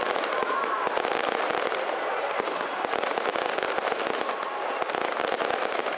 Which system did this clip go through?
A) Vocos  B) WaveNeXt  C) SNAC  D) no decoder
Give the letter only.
D